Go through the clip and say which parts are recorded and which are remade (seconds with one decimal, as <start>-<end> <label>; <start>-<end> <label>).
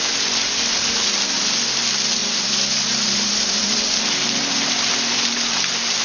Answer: 0.0-2.2 recorded; 2.2-6.0 remade